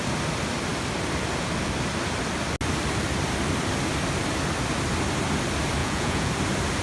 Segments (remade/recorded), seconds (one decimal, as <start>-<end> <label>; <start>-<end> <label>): 0.0-5.8 recorded; 5.8-6.3 remade; 6.3-6.8 recorded